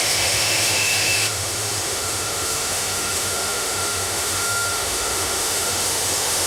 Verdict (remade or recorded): remade